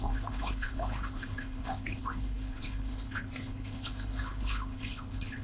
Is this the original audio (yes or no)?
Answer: no